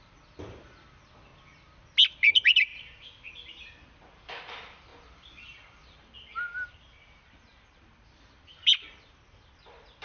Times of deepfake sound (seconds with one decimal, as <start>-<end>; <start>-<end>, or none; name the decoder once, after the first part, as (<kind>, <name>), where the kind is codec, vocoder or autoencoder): 0.0-1.3 (vocoder, BigVGAN v2); 2.1-10.0